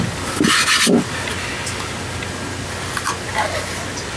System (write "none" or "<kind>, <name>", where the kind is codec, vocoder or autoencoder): none